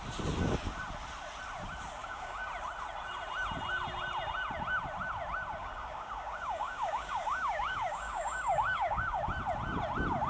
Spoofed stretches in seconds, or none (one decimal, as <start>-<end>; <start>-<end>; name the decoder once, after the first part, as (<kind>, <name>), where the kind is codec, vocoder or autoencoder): 2.0-2.5 (codec, DAC); 5.6-9.2